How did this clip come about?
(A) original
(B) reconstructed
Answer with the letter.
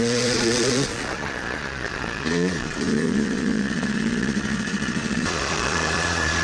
B